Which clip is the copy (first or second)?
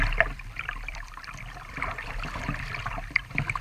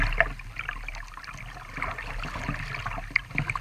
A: first